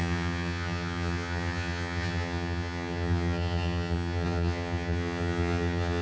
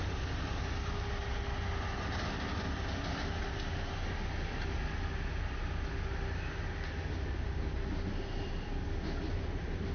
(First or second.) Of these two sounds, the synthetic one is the first